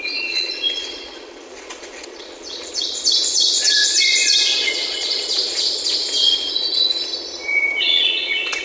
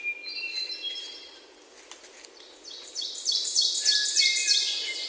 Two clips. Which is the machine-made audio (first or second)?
first